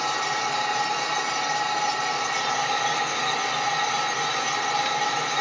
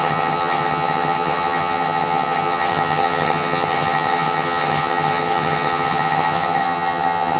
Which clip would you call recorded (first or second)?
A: first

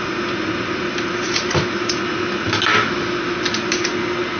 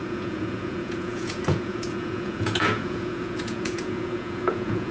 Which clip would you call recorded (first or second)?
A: first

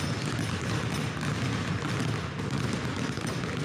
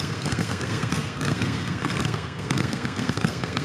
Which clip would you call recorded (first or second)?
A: first